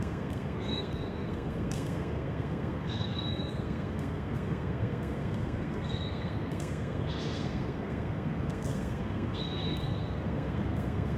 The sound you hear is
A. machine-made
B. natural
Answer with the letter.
A